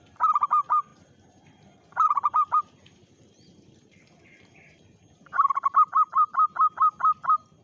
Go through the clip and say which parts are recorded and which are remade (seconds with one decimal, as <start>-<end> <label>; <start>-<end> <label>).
0.0-0.9 recorded; 0.9-2.6 remade; 2.6-3.0 recorded; 3.0-6.3 remade; 6.3-7.6 recorded